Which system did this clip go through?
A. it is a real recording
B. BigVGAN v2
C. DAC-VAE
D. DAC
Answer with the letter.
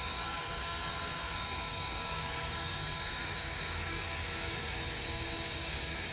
D